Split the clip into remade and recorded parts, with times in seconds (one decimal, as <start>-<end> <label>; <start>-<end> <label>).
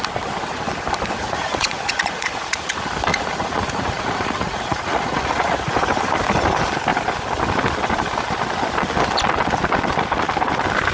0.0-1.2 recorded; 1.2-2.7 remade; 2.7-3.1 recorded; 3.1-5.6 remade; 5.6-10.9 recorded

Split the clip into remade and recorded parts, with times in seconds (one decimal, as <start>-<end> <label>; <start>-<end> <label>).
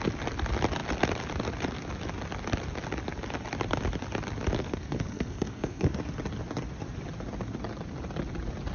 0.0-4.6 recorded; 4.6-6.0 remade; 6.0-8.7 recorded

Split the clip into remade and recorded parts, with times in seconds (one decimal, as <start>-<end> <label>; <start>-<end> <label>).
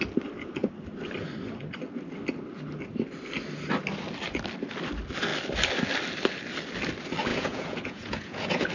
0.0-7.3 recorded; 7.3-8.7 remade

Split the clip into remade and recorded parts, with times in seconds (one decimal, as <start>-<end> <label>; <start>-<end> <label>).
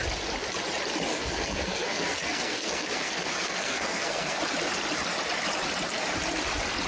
0.0-1.1 recorded; 1.1-4.4 remade; 4.4-6.9 recorded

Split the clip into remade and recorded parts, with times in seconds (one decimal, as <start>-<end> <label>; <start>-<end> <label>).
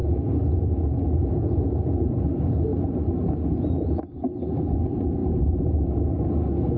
0.0-6.8 recorded